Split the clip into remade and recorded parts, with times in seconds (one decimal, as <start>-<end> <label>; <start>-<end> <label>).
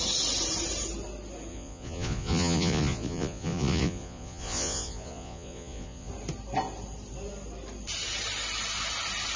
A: 0.0-1.5 recorded; 1.5-6.1 remade; 6.1-9.4 recorded